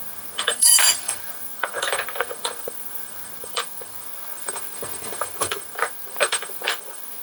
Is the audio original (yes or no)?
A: no